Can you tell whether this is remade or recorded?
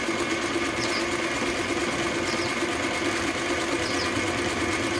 recorded